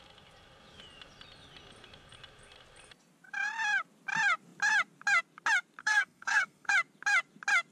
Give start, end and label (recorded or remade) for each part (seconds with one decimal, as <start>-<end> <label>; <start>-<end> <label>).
0.0-5.8 recorded; 5.8-6.7 remade; 6.7-7.7 recorded